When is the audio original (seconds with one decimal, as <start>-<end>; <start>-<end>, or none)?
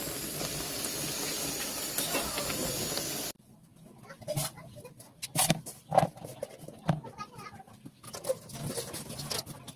0.0-9.8